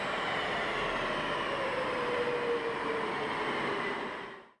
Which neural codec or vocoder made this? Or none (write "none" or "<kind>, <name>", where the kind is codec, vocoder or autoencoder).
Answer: none